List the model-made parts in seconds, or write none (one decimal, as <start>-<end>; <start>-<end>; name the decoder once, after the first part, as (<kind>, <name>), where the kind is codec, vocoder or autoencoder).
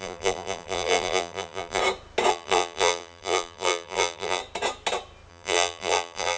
0.0-1.8 (vocoder, BigVGAN v2); 2.3-4.4; 5.3-6.4